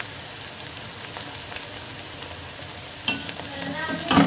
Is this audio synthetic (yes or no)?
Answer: no